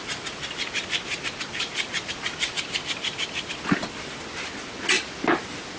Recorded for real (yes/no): yes